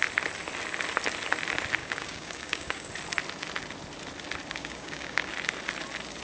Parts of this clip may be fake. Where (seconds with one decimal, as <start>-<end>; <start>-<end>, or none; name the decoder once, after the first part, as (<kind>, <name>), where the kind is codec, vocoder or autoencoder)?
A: 1.8-2.9 (codec, DAC); 4.6-5.3